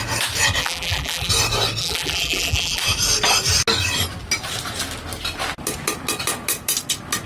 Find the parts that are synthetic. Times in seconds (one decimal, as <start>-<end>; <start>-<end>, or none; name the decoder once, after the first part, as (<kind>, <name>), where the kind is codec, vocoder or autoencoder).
0.6-1.3 (vocoder, BigVGAN v2); 1.8-2.8